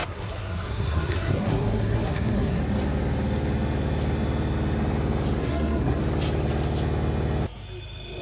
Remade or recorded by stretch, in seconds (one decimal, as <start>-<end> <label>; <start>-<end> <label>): 0.0-2.6 remade; 2.6-5.4 recorded; 5.4-6.0 remade; 6.0-8.2 recorded